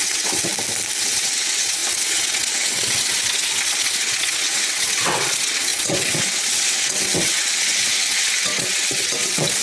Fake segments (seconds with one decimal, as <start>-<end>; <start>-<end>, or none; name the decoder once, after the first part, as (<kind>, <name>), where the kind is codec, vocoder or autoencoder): 0.0-0.5 (vocoder, WaveNeXt); 1.0-9.6